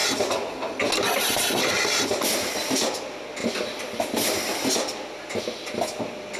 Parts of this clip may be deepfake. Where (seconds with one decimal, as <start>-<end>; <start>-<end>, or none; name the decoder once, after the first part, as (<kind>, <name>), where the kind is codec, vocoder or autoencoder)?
none